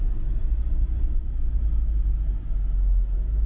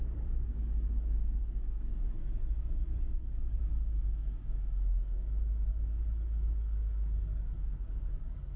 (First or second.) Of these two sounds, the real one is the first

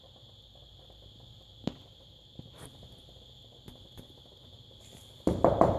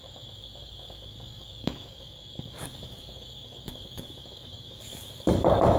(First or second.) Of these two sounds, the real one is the first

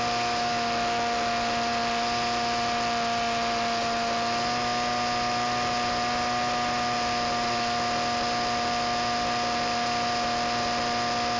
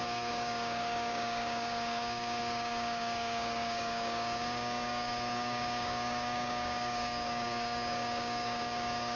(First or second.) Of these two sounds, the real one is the first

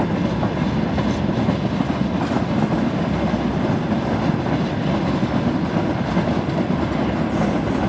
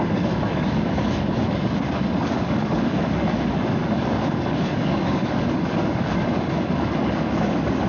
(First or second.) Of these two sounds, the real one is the first